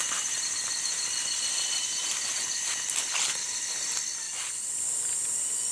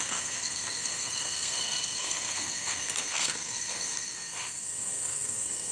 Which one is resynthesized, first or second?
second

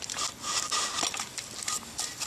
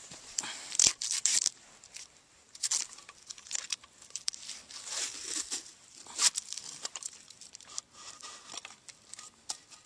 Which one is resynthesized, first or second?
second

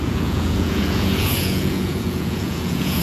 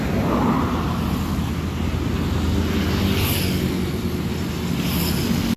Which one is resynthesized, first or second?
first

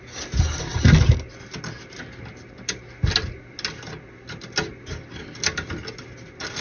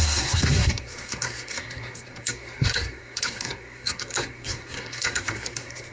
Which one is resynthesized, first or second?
second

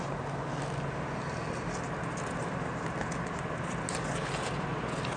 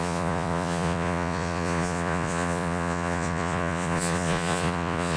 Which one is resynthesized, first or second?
second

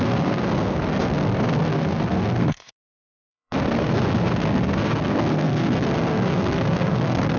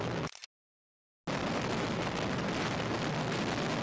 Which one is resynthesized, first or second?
first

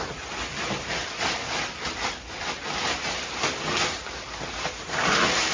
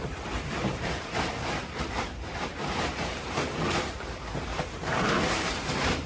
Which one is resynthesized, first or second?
second